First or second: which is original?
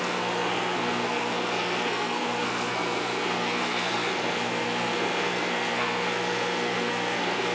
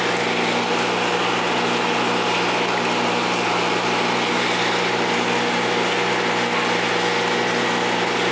second